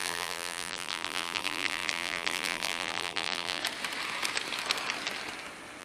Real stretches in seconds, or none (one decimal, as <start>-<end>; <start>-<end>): 3.6-5.8